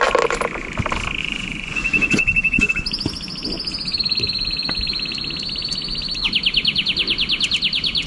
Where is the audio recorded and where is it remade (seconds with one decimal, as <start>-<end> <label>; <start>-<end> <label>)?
0.0-1.2 recorded; 1.2-2.7 remade; 2.7-8.1 recorded